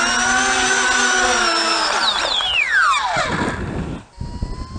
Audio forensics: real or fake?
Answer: real